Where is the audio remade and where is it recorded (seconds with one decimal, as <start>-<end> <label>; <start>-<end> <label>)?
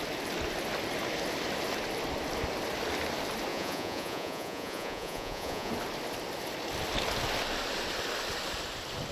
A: 0.0-3.5 recorded; 3.5-5.7 remade; 5.7-9.1 recorded